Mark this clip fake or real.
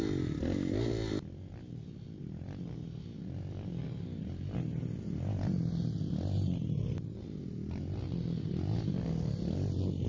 real